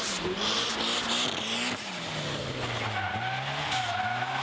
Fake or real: real